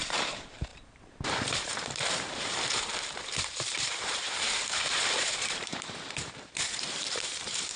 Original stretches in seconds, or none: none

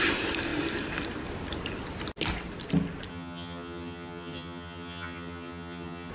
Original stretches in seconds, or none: 0.0-3.1

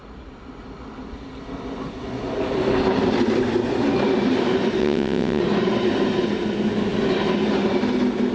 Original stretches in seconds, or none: 0.0-4.8; 5.4-8.3

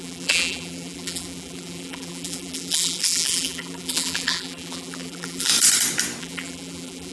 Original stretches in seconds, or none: 5.5-6.2